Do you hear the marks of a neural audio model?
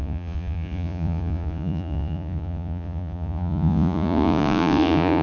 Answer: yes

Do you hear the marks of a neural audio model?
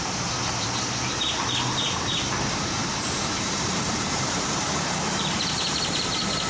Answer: yes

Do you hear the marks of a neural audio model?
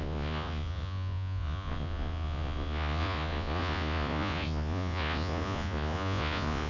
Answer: yes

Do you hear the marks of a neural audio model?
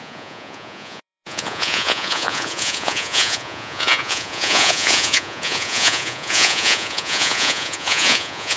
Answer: yes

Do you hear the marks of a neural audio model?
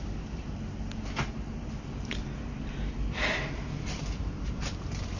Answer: no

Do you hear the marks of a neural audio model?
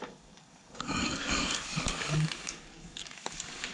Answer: yes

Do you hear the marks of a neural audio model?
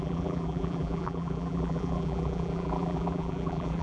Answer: yes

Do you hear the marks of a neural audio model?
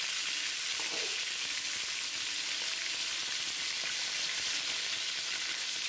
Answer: no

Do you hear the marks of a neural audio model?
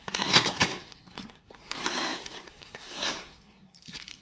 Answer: yes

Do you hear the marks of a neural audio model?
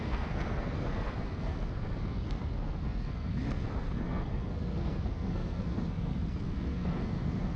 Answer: yes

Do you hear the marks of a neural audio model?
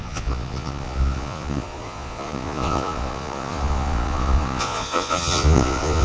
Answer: yes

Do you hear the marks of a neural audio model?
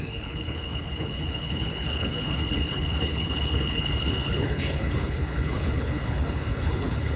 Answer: yes